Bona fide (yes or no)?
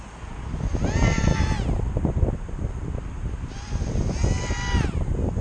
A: yes